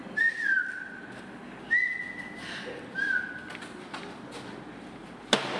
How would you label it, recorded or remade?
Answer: recorded